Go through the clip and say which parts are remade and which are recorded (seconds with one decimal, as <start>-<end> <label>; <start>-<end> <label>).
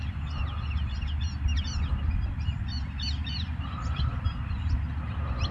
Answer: 0.0-5.5 recorded